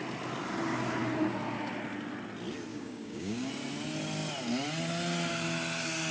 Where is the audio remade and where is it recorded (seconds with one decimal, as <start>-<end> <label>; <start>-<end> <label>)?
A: 0.0-2.7 recorded; 2.7-3.5 remade; 3.5-6.1 recorded